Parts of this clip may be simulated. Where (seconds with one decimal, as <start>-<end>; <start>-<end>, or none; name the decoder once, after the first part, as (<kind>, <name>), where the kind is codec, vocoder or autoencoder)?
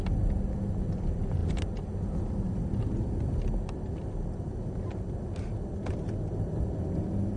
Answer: none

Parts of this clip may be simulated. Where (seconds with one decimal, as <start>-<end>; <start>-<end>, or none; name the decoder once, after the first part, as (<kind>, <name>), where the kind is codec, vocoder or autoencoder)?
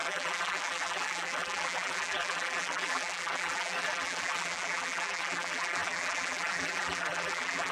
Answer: 0.0-7.7 (vocoder, BigVGAN v2)